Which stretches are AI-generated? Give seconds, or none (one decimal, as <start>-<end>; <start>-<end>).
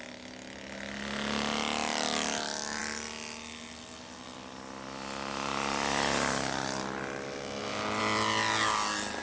none